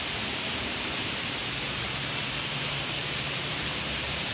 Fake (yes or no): yes